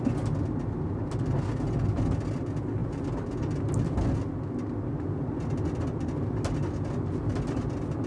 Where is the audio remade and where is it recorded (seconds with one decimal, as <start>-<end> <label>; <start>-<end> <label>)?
0.0-8.1 recorded